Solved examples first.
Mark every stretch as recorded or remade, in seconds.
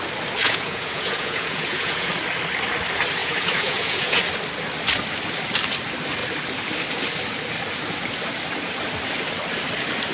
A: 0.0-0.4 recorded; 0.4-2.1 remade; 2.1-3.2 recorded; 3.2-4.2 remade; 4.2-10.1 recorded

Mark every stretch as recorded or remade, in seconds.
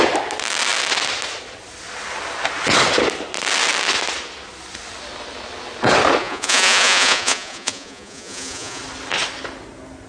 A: 0.0-6.2 recorded; 6.2-8.8 remade; 8.8-10.1 recorded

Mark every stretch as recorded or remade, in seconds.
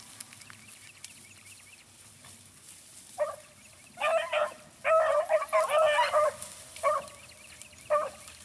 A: 0.0-8.4 recorded